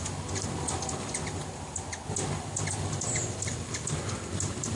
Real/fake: fake